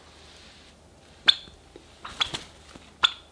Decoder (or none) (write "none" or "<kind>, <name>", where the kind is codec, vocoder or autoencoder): none